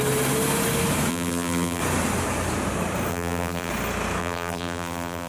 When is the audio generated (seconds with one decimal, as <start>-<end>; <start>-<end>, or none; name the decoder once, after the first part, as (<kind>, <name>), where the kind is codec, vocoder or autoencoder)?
1.1-1.8 (vocoder, BigVGAN v2); 3.1-3.7; 4.2-5.3